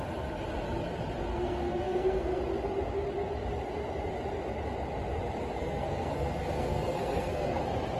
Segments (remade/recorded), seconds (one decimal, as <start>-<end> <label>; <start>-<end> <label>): 0.0-1.3 recorded; 1.3-2.4 remade; 2.4-5.6 recorded; 5.6-7.6 remade; 7.6-8.0 recorded